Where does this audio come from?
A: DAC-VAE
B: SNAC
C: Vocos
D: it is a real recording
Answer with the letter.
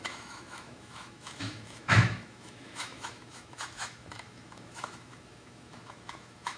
A